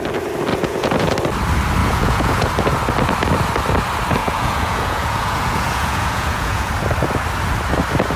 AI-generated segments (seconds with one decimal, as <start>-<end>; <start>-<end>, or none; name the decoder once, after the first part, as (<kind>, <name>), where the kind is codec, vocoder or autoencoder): 0.5-1.1 (vocoder, Vocos); 1.8-2.5; 4.2-6.7